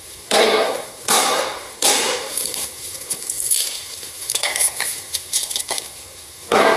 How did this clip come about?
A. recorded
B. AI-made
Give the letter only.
B